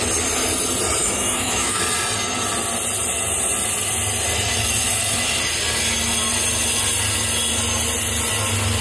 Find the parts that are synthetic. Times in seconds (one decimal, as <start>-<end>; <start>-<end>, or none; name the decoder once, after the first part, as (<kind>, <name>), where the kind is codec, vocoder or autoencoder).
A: 1.0-1.8 (autoencoder, DAC-VAE)